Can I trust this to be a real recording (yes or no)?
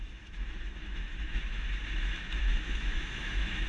no